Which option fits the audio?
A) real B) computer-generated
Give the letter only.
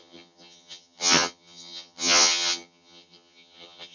B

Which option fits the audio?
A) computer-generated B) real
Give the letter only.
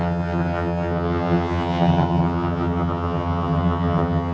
A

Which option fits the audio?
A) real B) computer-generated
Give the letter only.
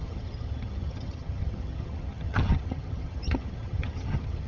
B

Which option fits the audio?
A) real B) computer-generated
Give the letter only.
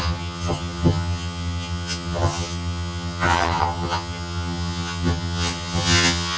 B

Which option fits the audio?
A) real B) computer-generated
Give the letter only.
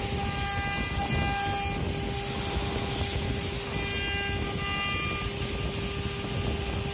A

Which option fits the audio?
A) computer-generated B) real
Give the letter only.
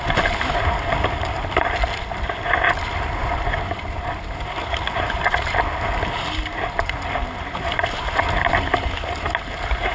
B